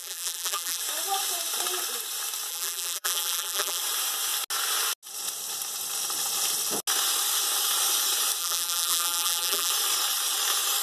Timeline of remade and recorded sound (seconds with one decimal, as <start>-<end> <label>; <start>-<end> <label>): 0.0-0.8 remade; 0.8-2.5 recorded; 2.5-3.8 remade; 3.8-8.4 recorded; 8.4-9.7 remade; 9.7-10.8 recorded